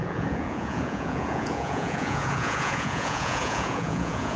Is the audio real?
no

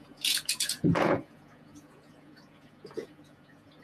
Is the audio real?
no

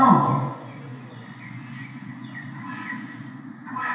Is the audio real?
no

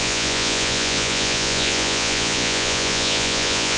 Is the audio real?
no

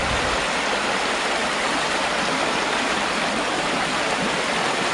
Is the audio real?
yes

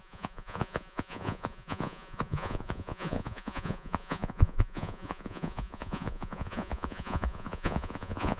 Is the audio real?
no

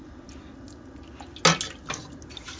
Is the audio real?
yes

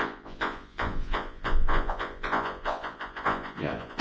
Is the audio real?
no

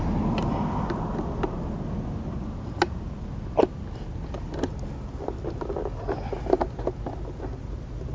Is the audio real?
yes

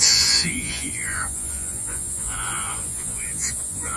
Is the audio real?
no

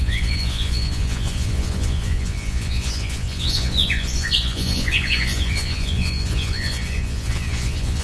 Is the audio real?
no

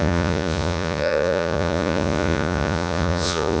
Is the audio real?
no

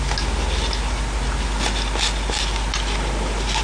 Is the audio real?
yes